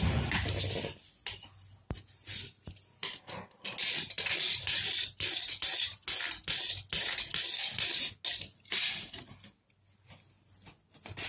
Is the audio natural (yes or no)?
yes